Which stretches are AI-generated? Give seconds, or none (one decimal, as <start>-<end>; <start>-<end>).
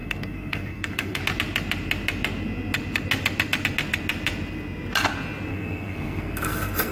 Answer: 0.0-1.2; 5.5-6.9